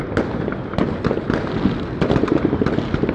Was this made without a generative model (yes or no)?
yes